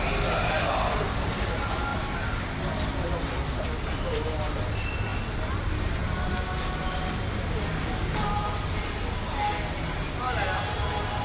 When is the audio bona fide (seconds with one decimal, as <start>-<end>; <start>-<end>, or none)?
0.0-11.2